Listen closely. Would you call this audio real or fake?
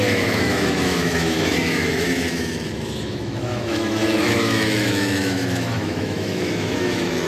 fake